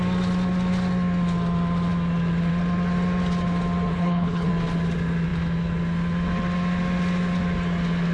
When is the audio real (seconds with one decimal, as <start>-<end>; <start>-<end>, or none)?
0.0-3.9; 4.5-8.1